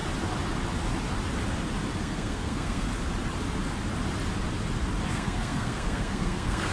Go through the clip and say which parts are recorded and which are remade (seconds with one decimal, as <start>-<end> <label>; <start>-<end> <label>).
0.0-2.0 recorded; 2.0-2.9 remade; 2.9-5.1 recorded; 5.1-6.7 remade